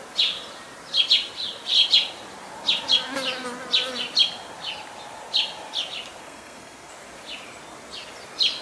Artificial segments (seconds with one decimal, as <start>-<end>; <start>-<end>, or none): 6.2-6.9